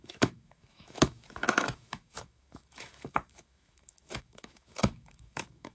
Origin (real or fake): fake